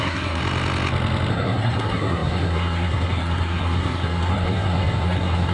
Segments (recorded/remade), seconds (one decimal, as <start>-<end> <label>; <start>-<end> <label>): 0.0-0.4 remade; 0.4-1.3 recorded; 1.3-5.5 remade